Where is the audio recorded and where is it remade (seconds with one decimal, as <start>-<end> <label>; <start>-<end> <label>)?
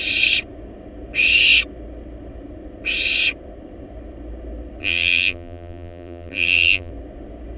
0.0-4.8 recorded; 4.8-6.9 remade; 6.9-7.6 recorded